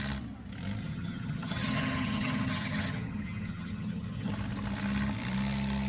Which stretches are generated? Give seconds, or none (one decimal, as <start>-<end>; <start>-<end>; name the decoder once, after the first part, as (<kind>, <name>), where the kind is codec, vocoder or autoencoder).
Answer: 0.8-4.3 (vocoder, HiFi-GAN)